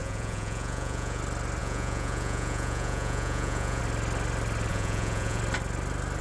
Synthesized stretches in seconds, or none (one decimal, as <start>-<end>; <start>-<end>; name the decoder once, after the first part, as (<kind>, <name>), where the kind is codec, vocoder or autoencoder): 0.0-1.2 (vocoder, Vocos); 1.6-3.8; 4.7-5.4